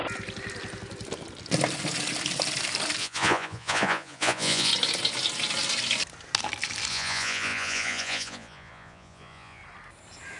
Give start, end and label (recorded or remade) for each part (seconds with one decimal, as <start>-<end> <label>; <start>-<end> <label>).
0.0-3.0 recorded; 3.0-4.7 remade; 4.7-6.9 recorded; 6.9-9.6 remade; 9.6-10.4 recorded